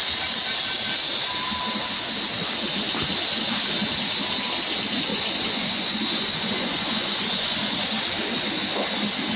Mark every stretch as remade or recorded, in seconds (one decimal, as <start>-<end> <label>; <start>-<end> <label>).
0.0-5.1 recorded; 5.1-8.0 remade; 8.0-9.4 recorded